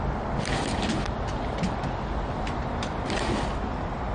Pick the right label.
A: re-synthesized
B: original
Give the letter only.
A